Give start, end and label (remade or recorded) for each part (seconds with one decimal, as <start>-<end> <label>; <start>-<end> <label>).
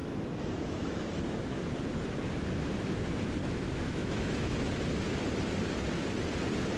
0.0-1.7 remade; 1.7-3.4 recorded; 3.4-4.6 remade; 4.6-6.8 recorded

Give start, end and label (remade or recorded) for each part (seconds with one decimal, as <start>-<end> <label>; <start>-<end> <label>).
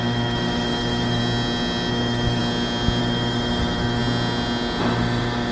0.0-1.2 remade; 1.2-1.9 recorded; 1.9-2.4 remade; 2.4-3.0 recorded; 3.0-4.0 remade; 4.0-4.8 recorded; 4.8-5.5 remade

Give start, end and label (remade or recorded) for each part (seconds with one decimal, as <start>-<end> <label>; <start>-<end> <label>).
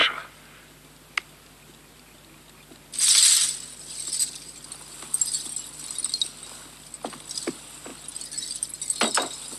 0.0-9.6 recorded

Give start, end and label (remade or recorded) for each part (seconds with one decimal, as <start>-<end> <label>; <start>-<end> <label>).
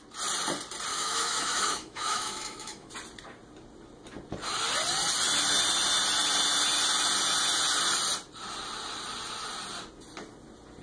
0.0-0.9 recorded; 0.9-2.9 remade; 2.9-10.8 recorded